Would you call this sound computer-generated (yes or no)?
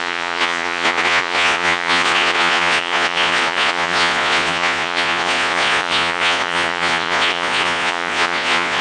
yes